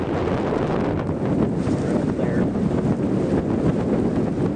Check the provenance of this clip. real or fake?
real